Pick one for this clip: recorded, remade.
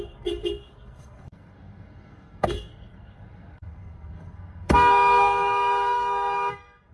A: remade